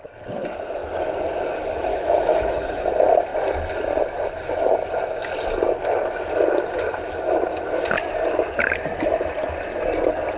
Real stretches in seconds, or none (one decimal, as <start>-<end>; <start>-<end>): 0.0-1.9; 2.7-10.4

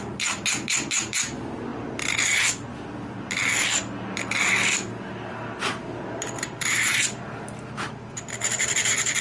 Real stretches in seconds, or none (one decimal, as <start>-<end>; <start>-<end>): 0.0-9.2

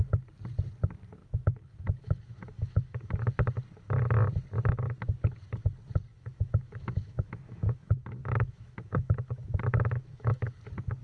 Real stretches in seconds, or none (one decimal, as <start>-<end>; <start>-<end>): 0.0-1.2; 3.1-6.1; 10.6-11.0

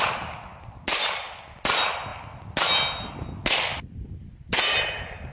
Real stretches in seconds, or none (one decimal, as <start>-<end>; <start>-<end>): 0.0-5.3